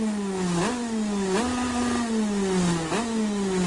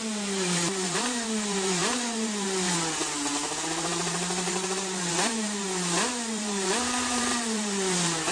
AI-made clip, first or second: second